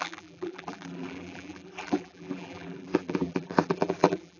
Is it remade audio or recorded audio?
remade